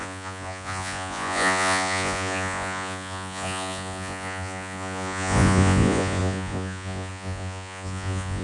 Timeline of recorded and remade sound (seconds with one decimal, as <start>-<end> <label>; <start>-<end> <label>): 0.0-8.4 remade